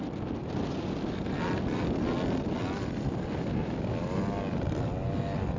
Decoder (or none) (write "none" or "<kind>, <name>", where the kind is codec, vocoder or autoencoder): none